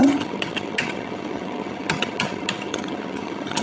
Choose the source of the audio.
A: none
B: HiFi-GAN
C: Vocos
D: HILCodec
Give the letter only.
B